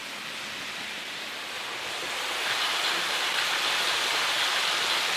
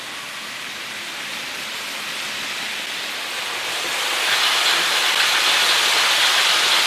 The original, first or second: second